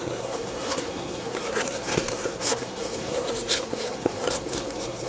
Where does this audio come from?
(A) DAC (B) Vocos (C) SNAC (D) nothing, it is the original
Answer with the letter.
C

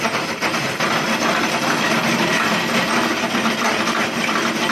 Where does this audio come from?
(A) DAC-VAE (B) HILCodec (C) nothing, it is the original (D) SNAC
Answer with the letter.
C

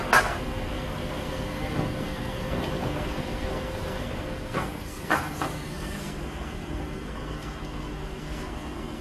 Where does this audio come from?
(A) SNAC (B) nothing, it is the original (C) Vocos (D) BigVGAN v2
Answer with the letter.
A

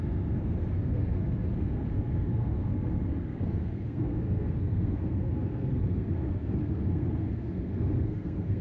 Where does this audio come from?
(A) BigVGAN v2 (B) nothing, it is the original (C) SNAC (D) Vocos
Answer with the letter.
C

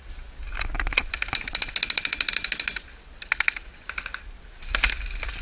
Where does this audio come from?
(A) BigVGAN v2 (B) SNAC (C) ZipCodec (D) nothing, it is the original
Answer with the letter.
D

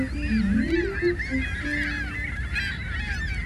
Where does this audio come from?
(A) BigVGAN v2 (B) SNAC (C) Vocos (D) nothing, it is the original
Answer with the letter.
D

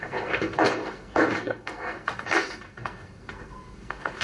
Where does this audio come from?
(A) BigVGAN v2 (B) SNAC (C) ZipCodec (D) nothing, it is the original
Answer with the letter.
B